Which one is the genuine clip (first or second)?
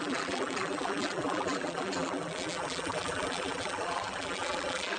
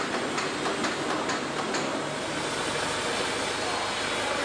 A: second